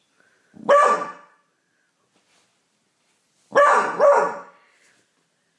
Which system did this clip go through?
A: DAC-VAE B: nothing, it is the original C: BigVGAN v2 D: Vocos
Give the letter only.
B